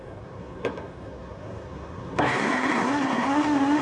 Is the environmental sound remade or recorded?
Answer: remade